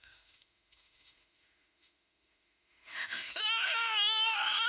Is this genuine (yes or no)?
no